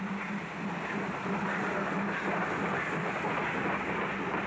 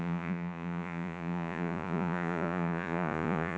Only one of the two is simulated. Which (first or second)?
second